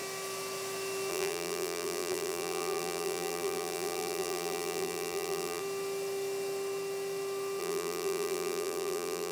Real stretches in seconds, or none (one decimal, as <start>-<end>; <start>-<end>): 0.0-1.1; 5.6-7.6